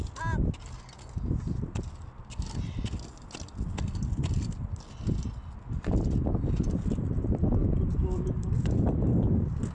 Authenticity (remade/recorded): recorded